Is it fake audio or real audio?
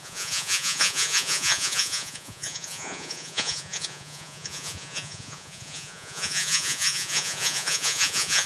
fake